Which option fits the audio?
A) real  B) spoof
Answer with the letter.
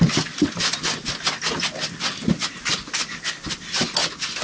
A